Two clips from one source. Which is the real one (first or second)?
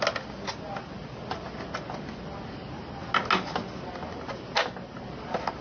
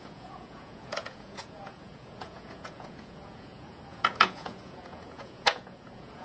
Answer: first